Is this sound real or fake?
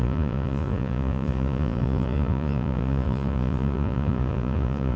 fake